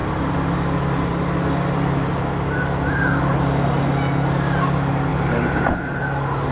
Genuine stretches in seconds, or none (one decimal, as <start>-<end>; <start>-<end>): 0.0-6.5